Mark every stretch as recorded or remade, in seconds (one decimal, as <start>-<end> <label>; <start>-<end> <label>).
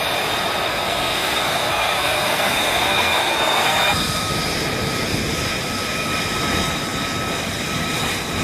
0.0-0.7 recorded; 0.7-4.3 remade; 4.3-8.4 recorded